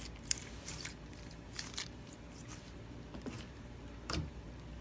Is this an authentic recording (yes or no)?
no